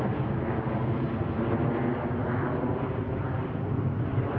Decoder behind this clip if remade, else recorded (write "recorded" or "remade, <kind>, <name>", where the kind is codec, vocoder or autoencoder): recorded